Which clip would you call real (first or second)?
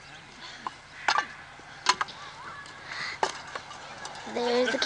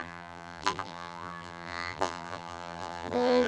first